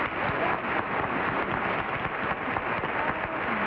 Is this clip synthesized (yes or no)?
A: no